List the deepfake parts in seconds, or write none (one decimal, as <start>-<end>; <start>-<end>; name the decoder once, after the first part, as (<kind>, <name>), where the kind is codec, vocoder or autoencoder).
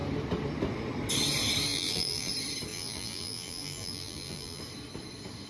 1.7-2.3 (vocoder, BigVGAN v2); 2.7-4.6